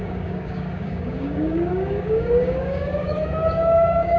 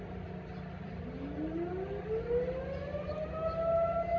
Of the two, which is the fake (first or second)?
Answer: first